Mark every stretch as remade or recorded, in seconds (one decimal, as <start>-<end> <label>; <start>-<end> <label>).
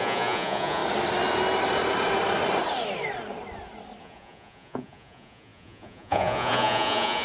0.0-0.8 remade; 0.8-4.0 recorded; 4.0-7.2 remade